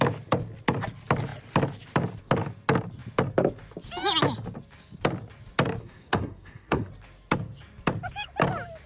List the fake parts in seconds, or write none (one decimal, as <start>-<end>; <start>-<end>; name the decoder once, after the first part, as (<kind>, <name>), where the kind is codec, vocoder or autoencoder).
5.8-6.9 (codec, SNAC)